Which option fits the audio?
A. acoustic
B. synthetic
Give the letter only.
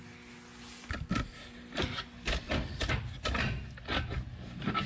A